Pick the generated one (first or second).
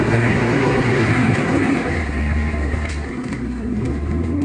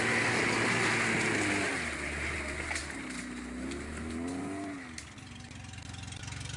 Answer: first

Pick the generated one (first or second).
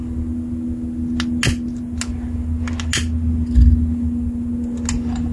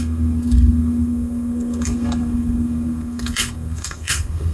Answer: second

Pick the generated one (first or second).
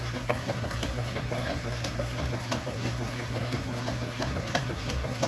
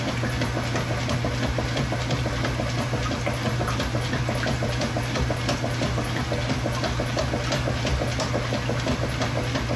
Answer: first